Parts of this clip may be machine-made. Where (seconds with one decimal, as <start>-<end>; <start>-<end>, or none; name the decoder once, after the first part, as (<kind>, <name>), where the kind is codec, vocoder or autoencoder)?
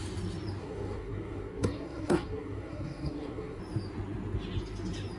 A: 0.6-3.6 (codec, SNAC)